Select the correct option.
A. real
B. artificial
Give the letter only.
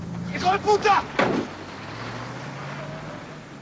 A